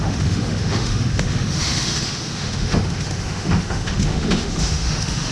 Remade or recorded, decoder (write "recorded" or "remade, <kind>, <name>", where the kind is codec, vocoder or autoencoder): remade, autoencoder, DAC-VAE